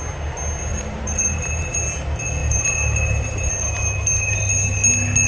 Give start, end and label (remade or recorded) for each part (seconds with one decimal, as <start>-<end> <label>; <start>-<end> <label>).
0.0-0.7 recorded; 0.7-1.8 remade; 1.8-2.4 recorded; 2.4-3.5 remade; 3.5-5.3 recorded